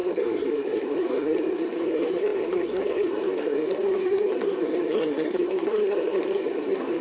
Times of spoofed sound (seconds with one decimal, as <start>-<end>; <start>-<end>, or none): 0.0-7.0

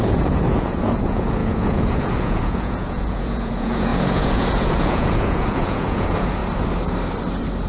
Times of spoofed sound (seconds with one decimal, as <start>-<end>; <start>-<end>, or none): 0.0-6.4

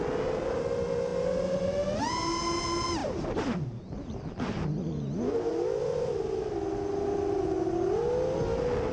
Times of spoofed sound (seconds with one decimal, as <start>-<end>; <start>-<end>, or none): none

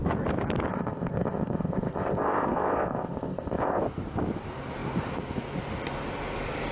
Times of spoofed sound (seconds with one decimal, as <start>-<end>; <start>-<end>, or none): 0.7-3.8

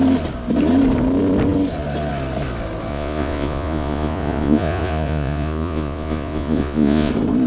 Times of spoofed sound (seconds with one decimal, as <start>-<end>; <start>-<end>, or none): 2.9-7.1

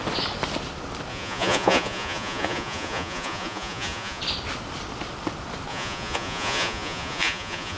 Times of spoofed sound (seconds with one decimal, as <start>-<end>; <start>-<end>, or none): 1.1-4.2; 5.7-7.8